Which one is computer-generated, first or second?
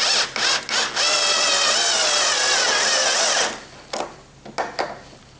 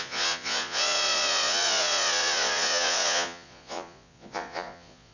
second